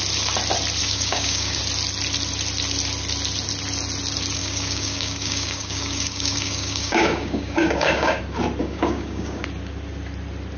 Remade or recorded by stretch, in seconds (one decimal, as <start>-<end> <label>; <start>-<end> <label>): 0.0-0.8 recorded; 0.8-1.6 remade; 1.6-4.4 recorded; 4.4-8.2 remade; 8.2-8.6 recorded; 8.6-9.4 remade; 9.4-10.6 recorded